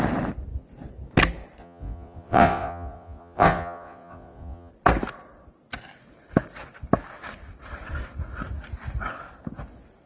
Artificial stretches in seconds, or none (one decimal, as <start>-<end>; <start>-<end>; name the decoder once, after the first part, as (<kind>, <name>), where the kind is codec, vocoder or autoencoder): 1.6-4.7 (vocoder, Vocos)